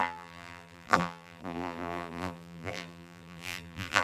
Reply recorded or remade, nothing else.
remade